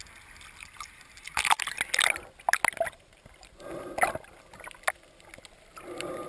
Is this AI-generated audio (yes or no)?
no